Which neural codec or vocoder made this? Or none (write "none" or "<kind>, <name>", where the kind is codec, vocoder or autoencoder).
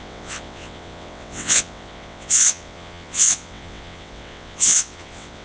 vocoder, WaveNeXt